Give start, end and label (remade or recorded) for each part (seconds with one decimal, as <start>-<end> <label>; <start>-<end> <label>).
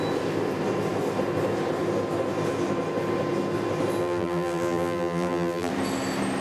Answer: 0.0-4.0 recorded; 4.0-5.7 remade; 5.7-6.4 recorded